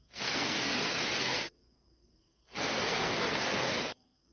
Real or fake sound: fake